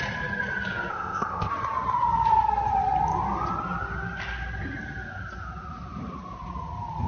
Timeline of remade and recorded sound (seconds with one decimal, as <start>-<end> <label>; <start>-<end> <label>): 0.0-0.9 recorded; 0.9-1.5 remade; 1.5-7.1 recorded

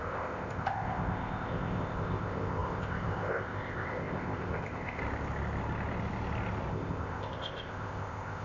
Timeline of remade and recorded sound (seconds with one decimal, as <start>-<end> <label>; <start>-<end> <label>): 0.0-5.0 remade; 5.0-6.7 recorded; 6.7-8.4 remade